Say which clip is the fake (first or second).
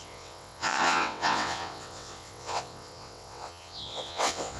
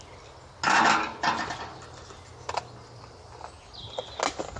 first